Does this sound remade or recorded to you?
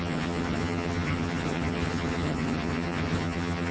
remade